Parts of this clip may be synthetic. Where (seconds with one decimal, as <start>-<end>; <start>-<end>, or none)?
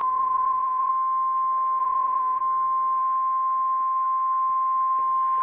0.0-0.9; 1.8-2.4